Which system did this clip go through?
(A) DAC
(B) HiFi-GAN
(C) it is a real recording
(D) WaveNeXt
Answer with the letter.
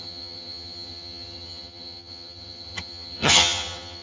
B